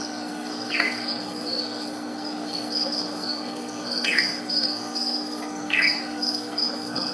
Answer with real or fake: fake